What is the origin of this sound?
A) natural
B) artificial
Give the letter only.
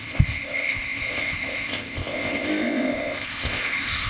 B